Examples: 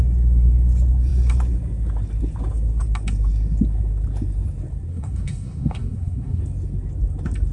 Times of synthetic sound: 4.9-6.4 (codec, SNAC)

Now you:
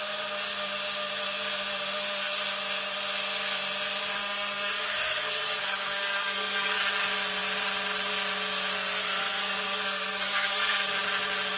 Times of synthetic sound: 4.2-6.8 (codec, SNAC); 9.0-10.9

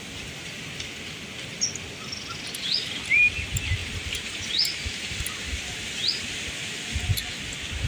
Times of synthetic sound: 3.8-5.2 (vocoder, BigVGAN v2)

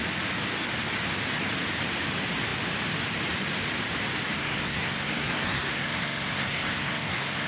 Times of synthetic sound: 4.4-7.5 (codec, SNAC)

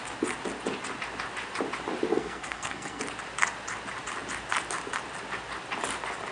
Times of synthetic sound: 2.1-3.0 (codec, SNAC)